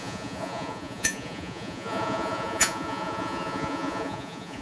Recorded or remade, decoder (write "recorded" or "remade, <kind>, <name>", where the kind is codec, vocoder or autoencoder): remade, vocoder, Vocos